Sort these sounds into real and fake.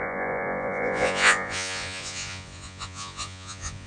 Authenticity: fake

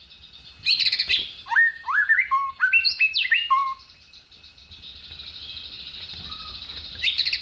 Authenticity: real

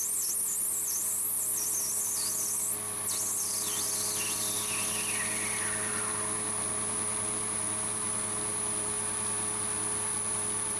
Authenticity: real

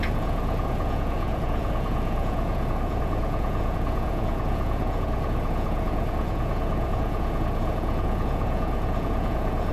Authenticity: fake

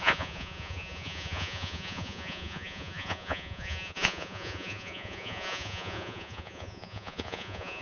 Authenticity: fake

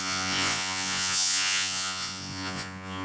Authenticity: fake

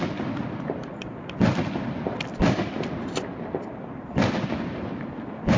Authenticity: real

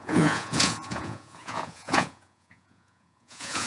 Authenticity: fake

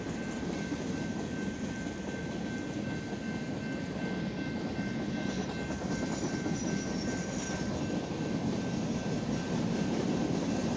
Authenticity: real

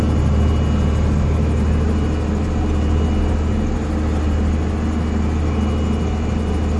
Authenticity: real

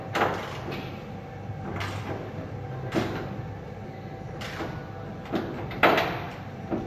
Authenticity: real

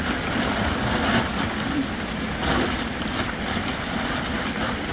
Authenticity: real